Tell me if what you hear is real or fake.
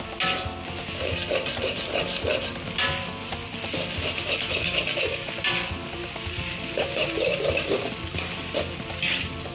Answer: real